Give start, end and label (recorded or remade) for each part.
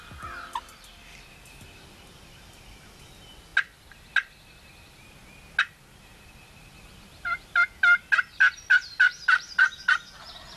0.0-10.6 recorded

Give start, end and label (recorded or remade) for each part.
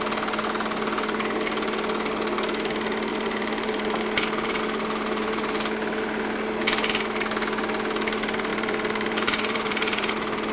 0.0-3.1 recorded; 3.1-4.6 remade; 4.6-8.5 recorded; 8.5-10.1 remade; 10.1-10.5 recorded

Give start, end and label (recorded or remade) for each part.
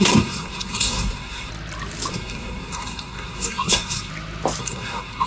0.0-1.5 remade; 1.5-2.1 recorded; 2.1-4.1 remade; 4.1-4.6 recorded; 4.6-5.3 remade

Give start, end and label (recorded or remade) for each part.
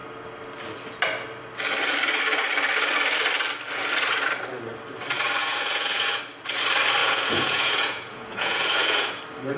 0.0-5.4 recorded; 5.4-6.2 remade; 6.2-7.0 recorded; 7.0-9.2 remade; 9.2-9.6 recorded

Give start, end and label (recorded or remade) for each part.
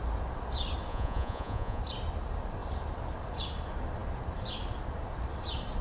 0.0-0.9 recorded; 0.9-1.8 remade; 1.8-5.8 recorded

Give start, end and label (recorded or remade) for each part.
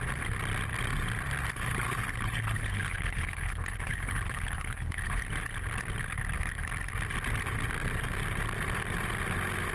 0.0-1.5 recorded; 1.5-5.2 remade; 5.2-9.7 recorded